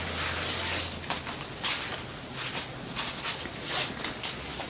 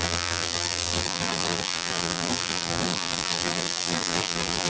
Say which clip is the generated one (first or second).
second